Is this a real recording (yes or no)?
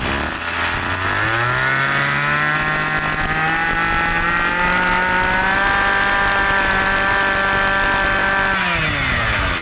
yes